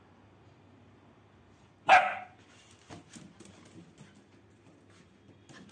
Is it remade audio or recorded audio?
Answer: recorded